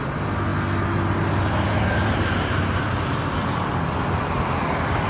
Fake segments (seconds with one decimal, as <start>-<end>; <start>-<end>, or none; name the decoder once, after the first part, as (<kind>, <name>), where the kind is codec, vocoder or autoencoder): 0.0-0.5 (vocoder, BigVGAN v2); 1.4-5.1